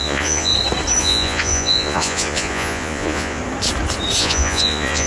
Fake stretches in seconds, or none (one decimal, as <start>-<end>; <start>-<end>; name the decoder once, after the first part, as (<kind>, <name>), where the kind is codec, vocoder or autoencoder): 0.0-0.5 (vocoder, Vocos); 1.0-3.4; 4.2-5.1